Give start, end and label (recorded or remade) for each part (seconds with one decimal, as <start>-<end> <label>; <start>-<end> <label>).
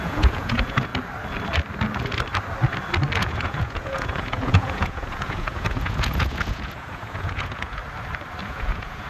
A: 0.0-0.9 remade; 0.9-3.2 recorded; 3.2-7.8 remade; 7.8-8.4 recorded; 8.4-9.1 remade